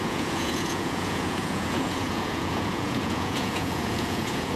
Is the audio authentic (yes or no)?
no